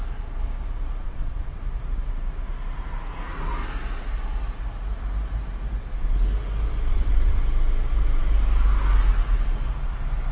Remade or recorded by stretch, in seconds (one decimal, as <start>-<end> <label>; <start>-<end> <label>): 0.0-1.0 recorded; 1.0-1.6 remade; 1.6-6.9 recorded; 6.9-7.4 remade; 7.4-10.3 recorded